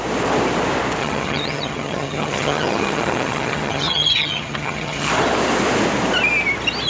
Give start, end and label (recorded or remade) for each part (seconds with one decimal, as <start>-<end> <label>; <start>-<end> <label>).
0.0-1.0 recorded; 1.0-5.1 remade; 5.1-6.9 recorded